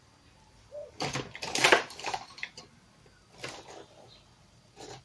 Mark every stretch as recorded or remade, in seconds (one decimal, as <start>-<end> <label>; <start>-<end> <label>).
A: 0.0-0.8 recorded; 0.8-2.6 remade; 2.6-5.0 recorded